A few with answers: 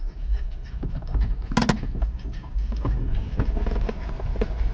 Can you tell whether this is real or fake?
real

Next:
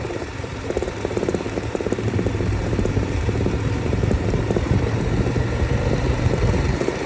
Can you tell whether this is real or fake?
fake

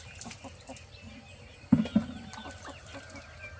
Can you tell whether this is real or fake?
real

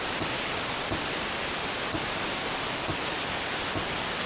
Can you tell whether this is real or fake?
fake